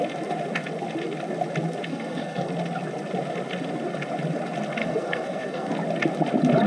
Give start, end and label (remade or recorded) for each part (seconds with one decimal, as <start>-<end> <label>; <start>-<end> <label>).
0.0-1.9 recorded; 1.9-2.5 remade; 2.5-4.8 recorded; 4.8-5.7 remade; 5.7-6.7 recorded